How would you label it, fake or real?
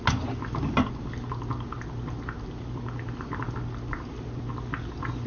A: real